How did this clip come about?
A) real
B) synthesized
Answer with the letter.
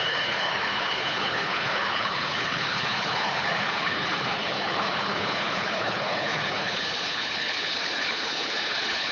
B